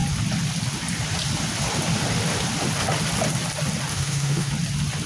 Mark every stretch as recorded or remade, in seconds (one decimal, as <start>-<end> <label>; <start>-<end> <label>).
0.0-3.9 recorded; 3.9-4.5 remade; 4.5-5.1 recorded